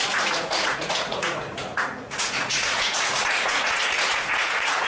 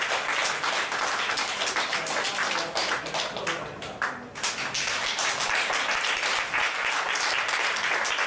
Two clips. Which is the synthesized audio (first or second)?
first